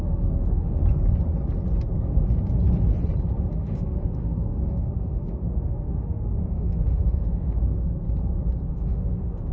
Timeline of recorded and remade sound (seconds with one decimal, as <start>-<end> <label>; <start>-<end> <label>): 0.0-0.8 remade; 0.8-3.5 recorded; 3.5-7.6 remade; 7.6-8.7 recorded; 8.7-9.5 remade